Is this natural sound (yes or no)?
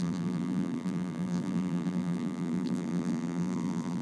no